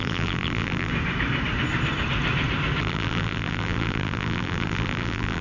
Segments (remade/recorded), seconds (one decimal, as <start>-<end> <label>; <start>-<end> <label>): 0.0-0.9 remade; 0.9-2.8 recorded; 2.8-5.4 remade